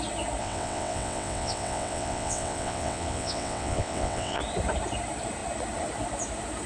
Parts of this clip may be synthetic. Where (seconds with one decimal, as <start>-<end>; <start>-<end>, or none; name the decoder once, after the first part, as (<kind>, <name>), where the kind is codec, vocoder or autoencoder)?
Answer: 0.4-4.4 (vocoder, WaveNeXt)